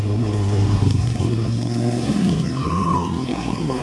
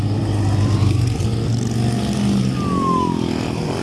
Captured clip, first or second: second